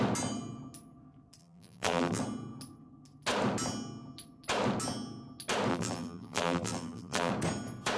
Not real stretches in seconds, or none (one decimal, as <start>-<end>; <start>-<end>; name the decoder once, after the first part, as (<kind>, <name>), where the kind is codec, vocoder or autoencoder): 1.4-2.2 (vocoder, BigVGAN v2); 5.7-7.3